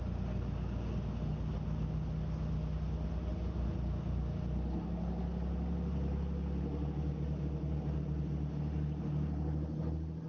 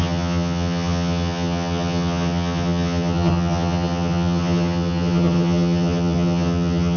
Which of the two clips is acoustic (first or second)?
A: first